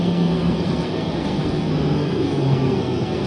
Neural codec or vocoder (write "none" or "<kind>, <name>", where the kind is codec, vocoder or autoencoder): codec, SNAC